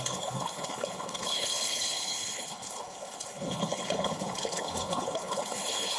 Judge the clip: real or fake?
fake